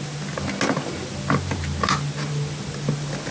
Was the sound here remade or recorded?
recorded